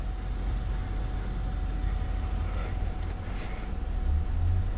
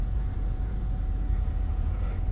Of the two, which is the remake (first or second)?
second